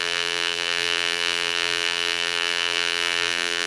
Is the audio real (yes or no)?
no